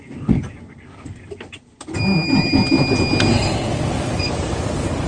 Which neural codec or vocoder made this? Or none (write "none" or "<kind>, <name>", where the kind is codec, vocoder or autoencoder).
none